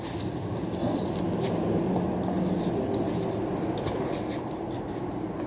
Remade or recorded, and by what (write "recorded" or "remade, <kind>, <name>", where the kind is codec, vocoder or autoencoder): recorded